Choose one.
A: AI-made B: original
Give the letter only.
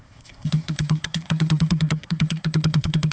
A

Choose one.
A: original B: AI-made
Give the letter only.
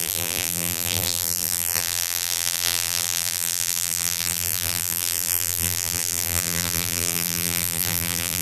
B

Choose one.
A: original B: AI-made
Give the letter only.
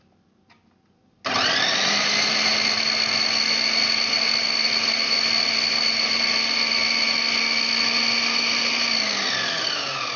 A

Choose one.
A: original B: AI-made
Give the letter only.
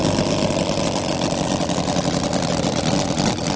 A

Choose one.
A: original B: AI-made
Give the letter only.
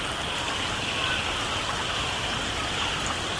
A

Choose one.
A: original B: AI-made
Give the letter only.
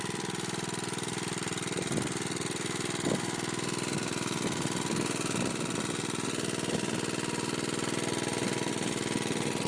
A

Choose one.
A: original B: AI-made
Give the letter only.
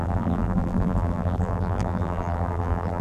B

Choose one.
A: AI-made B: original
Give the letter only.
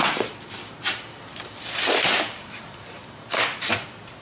A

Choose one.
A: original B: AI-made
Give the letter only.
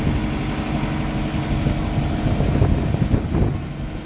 A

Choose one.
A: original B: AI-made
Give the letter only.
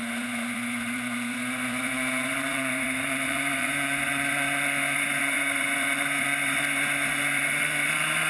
B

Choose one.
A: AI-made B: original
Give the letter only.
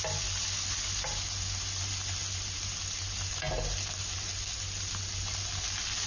B